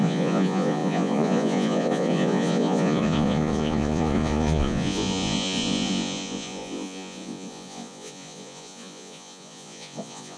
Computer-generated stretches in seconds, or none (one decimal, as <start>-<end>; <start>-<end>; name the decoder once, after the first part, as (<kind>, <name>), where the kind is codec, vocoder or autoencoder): 0.0-10.4 (vocoder, Vocos)